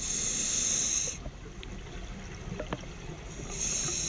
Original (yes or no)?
yes